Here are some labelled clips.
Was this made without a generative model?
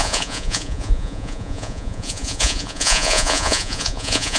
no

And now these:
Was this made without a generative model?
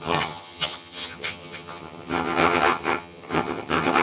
no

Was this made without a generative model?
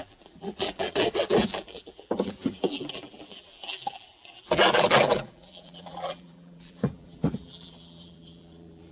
no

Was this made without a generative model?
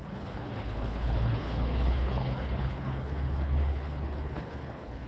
no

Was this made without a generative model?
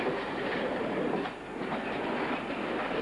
yes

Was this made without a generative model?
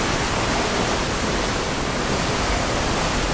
yes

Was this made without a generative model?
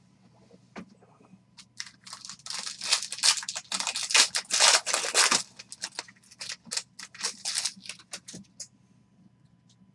yes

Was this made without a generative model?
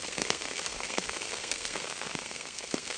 no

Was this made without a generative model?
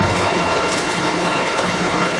no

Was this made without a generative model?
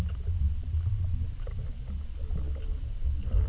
yes